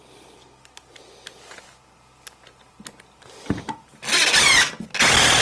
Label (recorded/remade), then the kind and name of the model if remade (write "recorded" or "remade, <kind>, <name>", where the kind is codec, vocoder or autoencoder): recorded